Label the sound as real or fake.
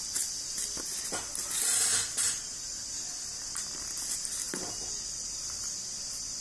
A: real